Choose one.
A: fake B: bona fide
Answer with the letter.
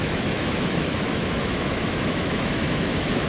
A